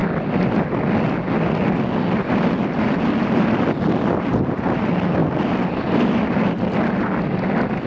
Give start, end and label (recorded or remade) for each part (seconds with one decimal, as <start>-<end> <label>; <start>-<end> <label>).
0.0-2.6 recorded; 2.6-7.9 remade